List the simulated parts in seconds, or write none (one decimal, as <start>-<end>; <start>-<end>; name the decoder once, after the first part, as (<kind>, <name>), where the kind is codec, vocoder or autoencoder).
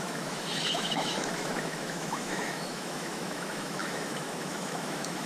0.0-5.3 (autoencoder, DAC-VAE)